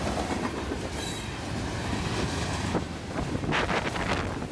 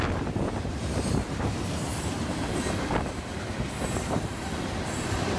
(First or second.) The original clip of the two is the first